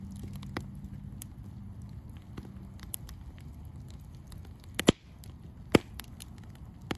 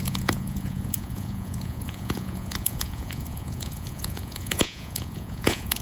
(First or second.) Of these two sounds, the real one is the first